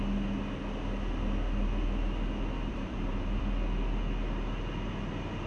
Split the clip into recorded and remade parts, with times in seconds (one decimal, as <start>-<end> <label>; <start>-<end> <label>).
0.0-2.7 recorded; 2.7-3.4 remade; 3.4-5.5 recorded